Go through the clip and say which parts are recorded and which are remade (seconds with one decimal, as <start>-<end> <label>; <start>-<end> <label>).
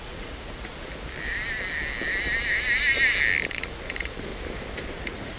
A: 0.0-0.9 remade; 0.9-3.5 recorded; 3.5-4.3 remade; 4.3-4.9 recorded; 4.9-5.4 remade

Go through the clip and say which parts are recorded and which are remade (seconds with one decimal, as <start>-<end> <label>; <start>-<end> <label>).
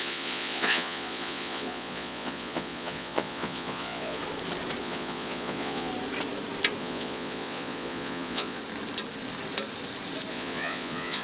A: 0.0-4.2 remade; 4.2-4.8 recorded; 4.8-5.9 remade; 5.9-6.8 recorded; 6.8-8.6 remade; 8.6-10.3 recorded; 10.3-11.2 remade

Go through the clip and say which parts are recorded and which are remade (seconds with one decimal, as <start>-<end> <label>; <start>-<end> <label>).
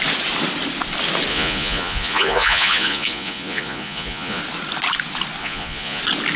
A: 0.0-1.3 recorded; 1.3-4.4 remade; 4.4-5.4 recorded; 5.4-6.0 remade; 6.0-6.4 recorded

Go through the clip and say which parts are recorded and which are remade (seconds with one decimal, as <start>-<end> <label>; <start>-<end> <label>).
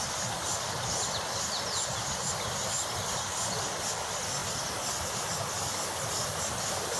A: 0.0-7.0 recorded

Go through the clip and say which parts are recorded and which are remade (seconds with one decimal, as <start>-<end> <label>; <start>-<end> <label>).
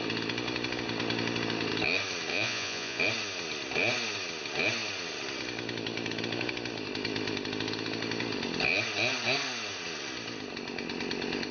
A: 0.0-2.3 recorded; 2.3-3.0 remade; 3.0-11.5 recorded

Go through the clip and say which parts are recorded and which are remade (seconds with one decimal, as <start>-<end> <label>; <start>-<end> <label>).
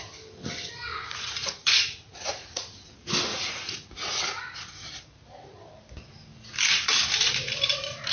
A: 0.0-0.9 recorded; 0.9-2.9 remade; 2.9-3.3 recorded; 3.3-4.2 remade; 4.2-8.1 recorded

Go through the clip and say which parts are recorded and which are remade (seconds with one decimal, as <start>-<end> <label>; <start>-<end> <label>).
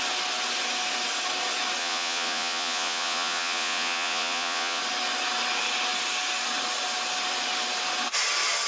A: 0.0-1.8 recorded; 1.8-4.8 remade; 4.8-8.7 recorded